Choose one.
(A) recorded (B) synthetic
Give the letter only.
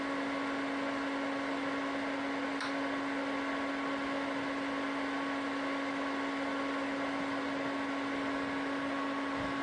A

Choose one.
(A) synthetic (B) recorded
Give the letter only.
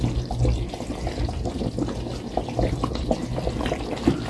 B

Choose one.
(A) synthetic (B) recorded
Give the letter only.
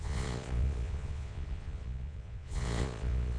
A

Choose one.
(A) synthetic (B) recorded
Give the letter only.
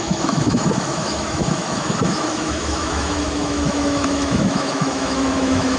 A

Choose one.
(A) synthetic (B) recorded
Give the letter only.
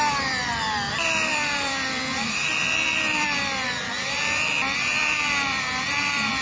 A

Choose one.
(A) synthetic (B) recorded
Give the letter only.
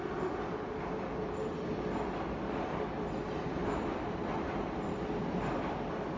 B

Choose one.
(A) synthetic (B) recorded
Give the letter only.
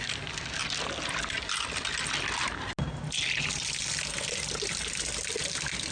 B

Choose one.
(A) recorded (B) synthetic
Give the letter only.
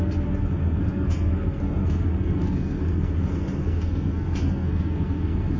B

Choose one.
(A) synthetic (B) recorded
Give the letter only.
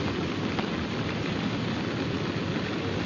B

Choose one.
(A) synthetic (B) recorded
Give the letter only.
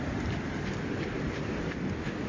B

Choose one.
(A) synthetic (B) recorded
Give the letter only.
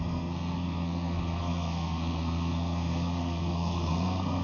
A